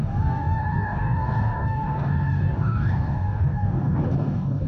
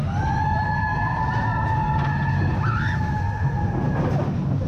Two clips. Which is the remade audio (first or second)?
first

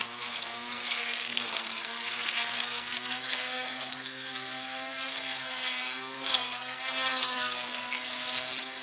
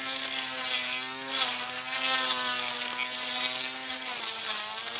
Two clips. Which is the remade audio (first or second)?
first